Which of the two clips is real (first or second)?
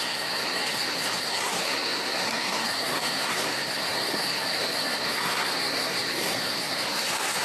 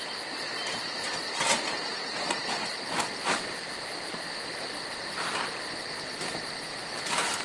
second